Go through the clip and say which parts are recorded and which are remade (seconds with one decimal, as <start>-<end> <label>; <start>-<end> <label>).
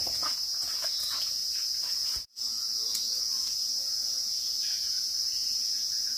0.0-6.2 remade